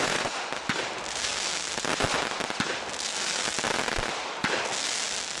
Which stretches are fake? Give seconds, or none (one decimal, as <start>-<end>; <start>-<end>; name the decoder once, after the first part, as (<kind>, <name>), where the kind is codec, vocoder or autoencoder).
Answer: 0.0-0.5 (vocoder, Vocos)